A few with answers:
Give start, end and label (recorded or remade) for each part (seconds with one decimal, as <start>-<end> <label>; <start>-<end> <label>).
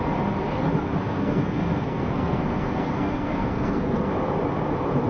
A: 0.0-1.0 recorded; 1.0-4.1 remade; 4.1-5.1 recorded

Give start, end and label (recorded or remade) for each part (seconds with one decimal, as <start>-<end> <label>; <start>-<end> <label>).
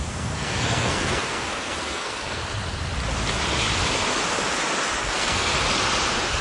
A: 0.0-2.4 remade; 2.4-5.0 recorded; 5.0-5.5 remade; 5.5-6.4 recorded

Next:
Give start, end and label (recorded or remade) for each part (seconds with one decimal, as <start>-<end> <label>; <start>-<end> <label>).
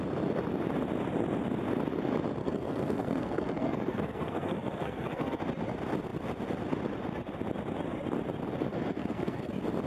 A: 0.0-2.4 recorded; 2.4-5.4 remade; 5.4-8.7 recorded; 8.7-9.5 remade; 9.5-9.9 recorded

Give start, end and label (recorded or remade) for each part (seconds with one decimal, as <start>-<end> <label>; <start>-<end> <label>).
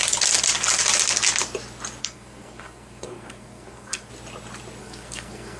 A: 0.0-2.0 recorded; 2.0-4.1 remade; 4.1-4.8 recorded; 4.8-5.6 remade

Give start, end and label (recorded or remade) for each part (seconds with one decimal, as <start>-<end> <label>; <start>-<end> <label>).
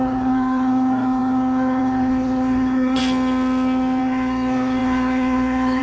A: 0.0-3.0 remade; 3.0-4.0 recorded; 4.0-5.8 remade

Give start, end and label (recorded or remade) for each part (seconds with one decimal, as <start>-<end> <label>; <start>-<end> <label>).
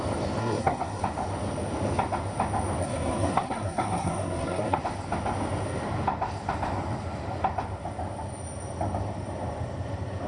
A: 0.0-0.4 recorded; 0.4-1.0 remade; 1.0-2.8 recorded; 2.8-4.8 remade; 4.8-10.3 recorded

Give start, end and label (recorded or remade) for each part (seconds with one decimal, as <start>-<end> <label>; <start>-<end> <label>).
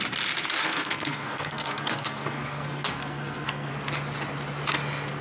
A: 0.0-0.6 recorded; 0.6-3.7 remade; 3.7-5.2 recorded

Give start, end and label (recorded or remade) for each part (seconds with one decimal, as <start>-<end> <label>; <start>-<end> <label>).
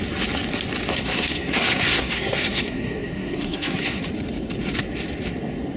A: 0.0-0.9 recorded; 0.9-4.0 remade; 4.0-5.8 recorded